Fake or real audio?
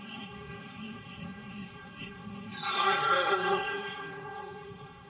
fake